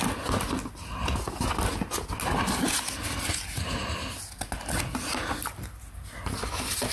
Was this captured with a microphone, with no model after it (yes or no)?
yes